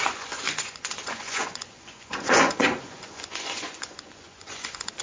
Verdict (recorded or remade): remade